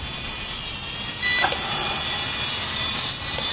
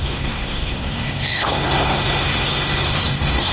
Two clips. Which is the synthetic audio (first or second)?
second